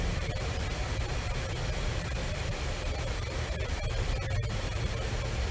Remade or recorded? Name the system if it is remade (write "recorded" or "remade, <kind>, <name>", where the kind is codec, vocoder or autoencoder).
remade, vocoder, BigVGAN v2